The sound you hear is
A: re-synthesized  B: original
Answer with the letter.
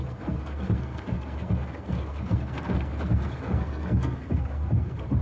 A